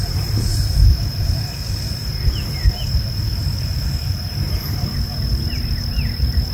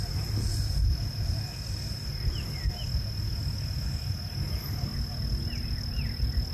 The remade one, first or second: first